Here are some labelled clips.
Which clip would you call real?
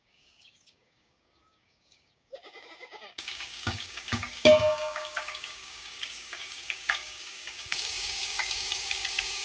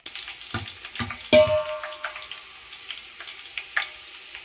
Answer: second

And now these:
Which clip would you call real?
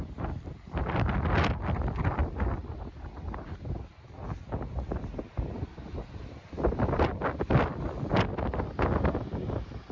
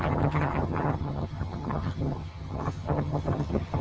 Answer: first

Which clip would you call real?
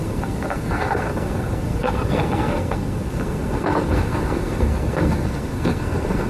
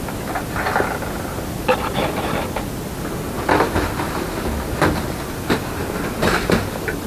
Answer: second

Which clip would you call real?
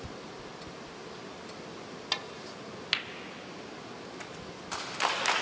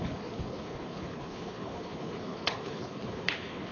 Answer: first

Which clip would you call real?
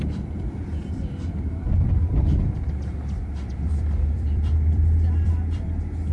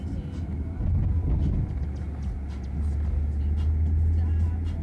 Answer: second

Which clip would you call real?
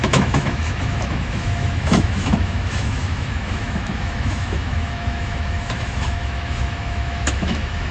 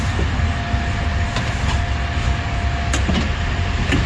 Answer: second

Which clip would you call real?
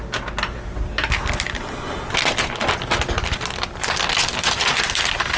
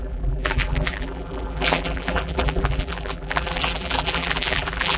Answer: first